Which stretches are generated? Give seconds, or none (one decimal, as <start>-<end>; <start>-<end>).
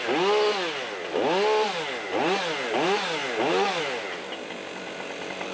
none